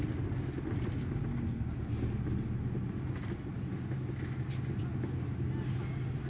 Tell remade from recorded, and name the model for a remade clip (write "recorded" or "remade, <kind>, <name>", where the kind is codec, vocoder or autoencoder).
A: recorded